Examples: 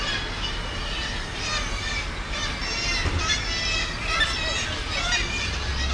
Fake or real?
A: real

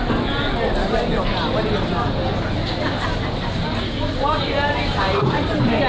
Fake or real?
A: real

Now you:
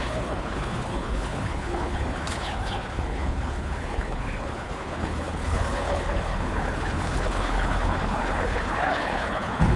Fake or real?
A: fake